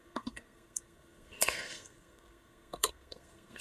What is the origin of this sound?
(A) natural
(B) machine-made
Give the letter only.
B